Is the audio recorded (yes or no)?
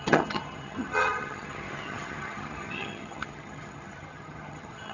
no